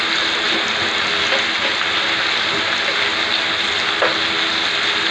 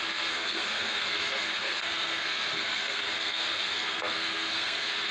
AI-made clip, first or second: second